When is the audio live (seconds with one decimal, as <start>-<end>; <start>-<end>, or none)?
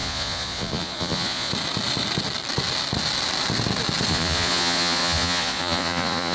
1.5-4.1